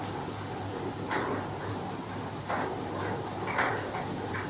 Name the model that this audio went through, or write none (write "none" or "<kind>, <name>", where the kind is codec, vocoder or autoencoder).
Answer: vocoder, BigVGAN v2